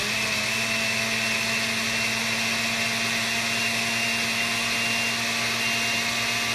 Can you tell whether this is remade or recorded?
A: recorded